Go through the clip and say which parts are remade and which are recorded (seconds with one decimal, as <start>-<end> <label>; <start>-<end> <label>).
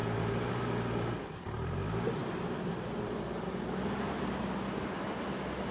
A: 0.0-2.2 recorded; 2.2-3.6 remade; 3.6-5.7 recorded